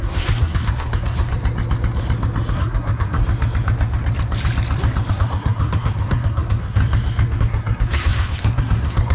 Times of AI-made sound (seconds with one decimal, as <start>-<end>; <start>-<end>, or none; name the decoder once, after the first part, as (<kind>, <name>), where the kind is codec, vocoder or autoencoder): 0.0-1.3 (codec, SNAC); 2.5-3.2; 5.1-6.8; 7.4-9.1